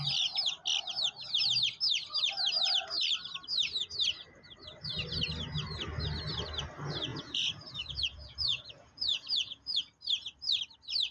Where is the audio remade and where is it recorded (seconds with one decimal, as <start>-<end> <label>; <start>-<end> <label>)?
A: 0.0-7.1 recorded; 7.1-9.8 remade; 9.8-11.1 recorded